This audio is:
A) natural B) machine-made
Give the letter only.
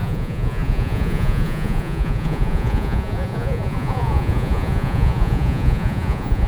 B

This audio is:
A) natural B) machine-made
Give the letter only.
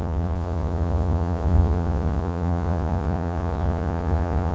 B